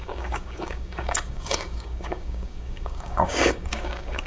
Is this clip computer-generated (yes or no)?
yes